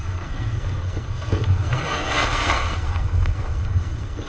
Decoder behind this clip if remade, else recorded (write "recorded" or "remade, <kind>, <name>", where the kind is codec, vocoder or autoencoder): remade, codec, SNAC